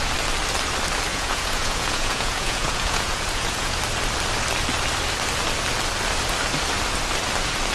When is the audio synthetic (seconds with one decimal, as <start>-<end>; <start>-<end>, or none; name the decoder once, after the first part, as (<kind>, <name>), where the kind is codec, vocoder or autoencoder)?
1.1-3.8 (vocoder, Vocos)

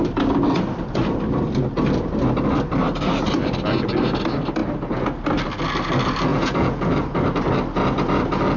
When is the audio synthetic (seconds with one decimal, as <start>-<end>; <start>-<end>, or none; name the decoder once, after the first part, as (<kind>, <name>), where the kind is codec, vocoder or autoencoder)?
6.3-6.9 (vocoder, Vocos)

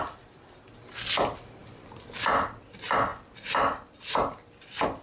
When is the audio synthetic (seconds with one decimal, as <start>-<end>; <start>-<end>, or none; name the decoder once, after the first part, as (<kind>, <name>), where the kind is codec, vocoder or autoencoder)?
none